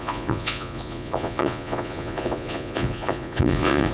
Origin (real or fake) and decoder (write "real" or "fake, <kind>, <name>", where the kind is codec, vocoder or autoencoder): fake, vocoder, Vocos